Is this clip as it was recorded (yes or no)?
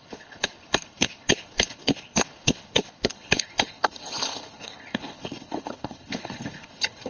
no